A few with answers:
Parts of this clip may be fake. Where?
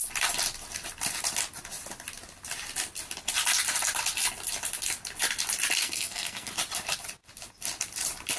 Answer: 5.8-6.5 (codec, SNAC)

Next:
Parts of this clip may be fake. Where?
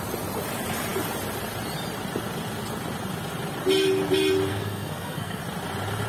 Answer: 4.5-5.4 (codec, SNAC)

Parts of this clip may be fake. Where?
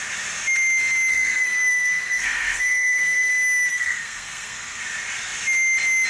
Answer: 1.1-3.3 (codec, SNAC); 3.7-4.8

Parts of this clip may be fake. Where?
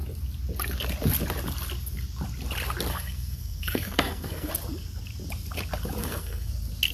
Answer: 2.9-4.5 (codec, SNAC); 6.0-6.5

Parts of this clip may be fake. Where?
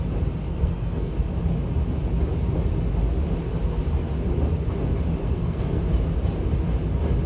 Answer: 0.5-1.1 (codec, SNAC); 5.2-5.8